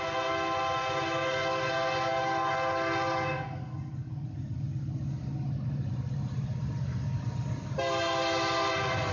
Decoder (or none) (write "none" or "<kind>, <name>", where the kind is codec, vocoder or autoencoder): none